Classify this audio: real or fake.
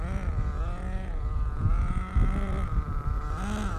real